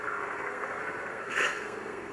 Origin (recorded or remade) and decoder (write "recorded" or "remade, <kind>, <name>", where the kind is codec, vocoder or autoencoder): remade, codec, SNAC